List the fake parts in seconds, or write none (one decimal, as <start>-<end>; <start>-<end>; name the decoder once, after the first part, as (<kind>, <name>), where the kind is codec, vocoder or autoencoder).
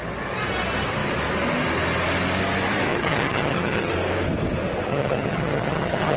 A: 2.9-3.9 (vocoder, HiFi-GAN); 4.9-6.2